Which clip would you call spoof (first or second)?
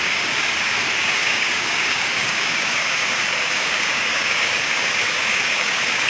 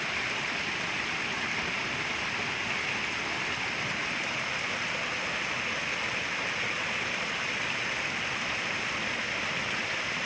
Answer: first